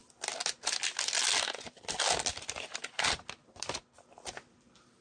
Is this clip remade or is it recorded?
recorded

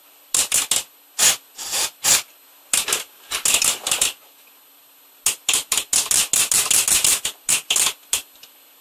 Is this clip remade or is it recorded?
recorded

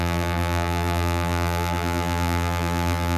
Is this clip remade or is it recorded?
remade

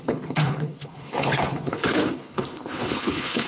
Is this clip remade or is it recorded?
remade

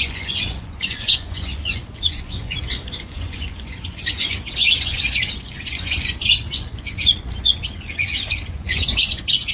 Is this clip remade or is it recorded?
remade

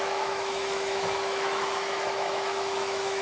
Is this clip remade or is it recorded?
remade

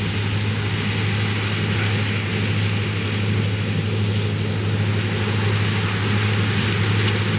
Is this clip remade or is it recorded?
recorded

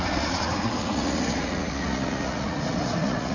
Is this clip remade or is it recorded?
remade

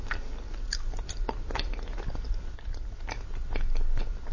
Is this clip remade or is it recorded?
recorded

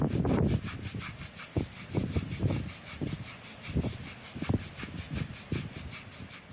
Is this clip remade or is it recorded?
recorded